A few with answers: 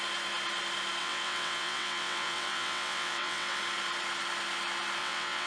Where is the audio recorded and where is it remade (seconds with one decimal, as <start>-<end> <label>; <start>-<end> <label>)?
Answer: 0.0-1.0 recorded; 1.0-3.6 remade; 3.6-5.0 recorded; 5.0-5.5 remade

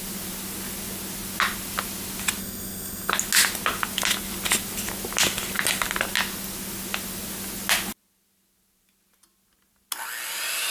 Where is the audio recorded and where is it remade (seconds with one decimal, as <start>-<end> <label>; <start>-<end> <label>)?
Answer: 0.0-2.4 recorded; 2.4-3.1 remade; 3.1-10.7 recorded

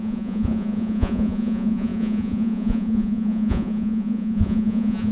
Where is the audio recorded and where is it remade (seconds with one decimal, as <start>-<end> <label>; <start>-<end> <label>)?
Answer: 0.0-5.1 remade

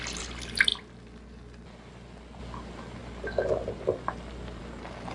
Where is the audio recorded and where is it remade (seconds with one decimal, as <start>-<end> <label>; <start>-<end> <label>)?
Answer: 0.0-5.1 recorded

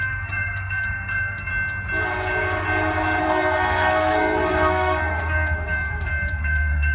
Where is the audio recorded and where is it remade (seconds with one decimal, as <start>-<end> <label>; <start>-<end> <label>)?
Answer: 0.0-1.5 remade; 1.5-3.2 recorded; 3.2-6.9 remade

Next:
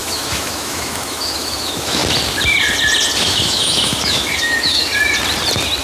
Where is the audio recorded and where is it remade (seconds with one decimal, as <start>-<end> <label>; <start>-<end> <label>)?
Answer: 0.0-2.0 remade; 2.0-3.2 recorded; 3.2-4.9 remade; 4.9-5.8 recorded

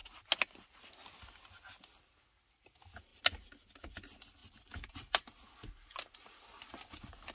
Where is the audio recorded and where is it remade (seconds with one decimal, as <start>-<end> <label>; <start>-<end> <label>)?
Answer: 0.0-7.3 recorded

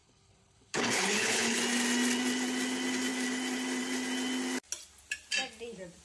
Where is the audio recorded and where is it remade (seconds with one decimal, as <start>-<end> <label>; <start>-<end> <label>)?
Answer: 0.0-1.6 remade; 1.6-6.0 recorded